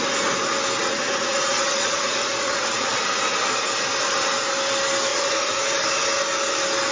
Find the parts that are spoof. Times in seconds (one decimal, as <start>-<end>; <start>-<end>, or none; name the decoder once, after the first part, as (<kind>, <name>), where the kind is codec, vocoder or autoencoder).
0.8-2.9 (vocoder, Vocos); 5.1-5.6